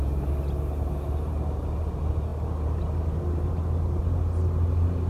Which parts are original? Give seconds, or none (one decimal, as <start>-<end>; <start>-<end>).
0.0-5.1